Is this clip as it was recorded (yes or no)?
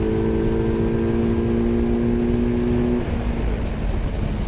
yes